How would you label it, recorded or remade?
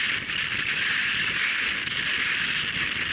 recorded